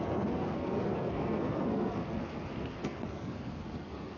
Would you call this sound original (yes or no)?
no